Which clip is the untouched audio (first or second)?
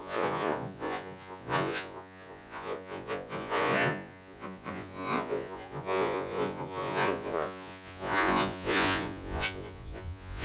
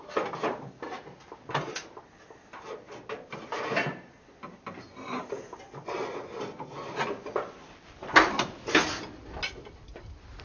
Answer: second